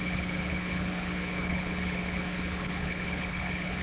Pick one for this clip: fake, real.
fake